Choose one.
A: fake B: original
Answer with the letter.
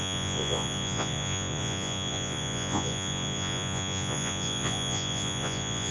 A